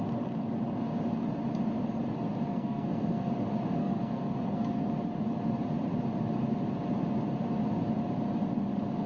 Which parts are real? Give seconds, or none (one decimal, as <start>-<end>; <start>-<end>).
0.0-2.5; 3.3-3.8; 4.8-9.1